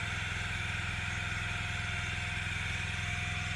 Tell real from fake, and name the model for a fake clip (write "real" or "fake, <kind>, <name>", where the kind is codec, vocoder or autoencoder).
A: real